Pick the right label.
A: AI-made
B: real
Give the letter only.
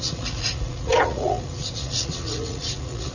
A